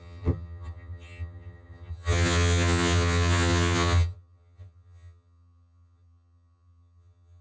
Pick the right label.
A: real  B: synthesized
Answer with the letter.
B